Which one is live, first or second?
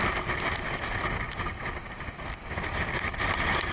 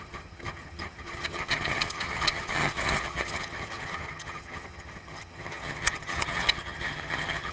first